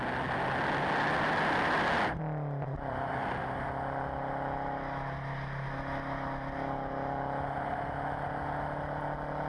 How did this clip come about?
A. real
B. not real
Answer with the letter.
A